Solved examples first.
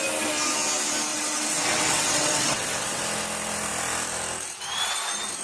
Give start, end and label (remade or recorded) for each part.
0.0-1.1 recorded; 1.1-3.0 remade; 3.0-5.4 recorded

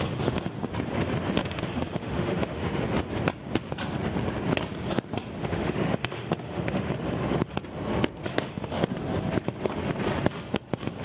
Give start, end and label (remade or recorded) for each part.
0.0-1.4 recorded; 1.4-2.8 remade; 2.8-5.4 recorded; 5.4-6.9 remade; 6.9-8.3 recorded; 8.3-8.9 remade; 8.9-11.0 recorded

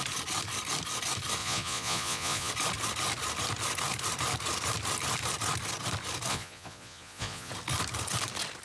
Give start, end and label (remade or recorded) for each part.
0.0-1.4 recorded; 1.4-2.5 remade; 2.5-6.3 recorded; 6.3-7.5 remade; 7.5-8.6 recorded

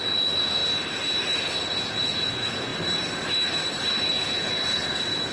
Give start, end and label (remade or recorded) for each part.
0.0-0.6 remade; 0.6-1.7 recorded; 1.7-2.7 remade; 2.7-4.1 recorded; 4.1-5.3 remade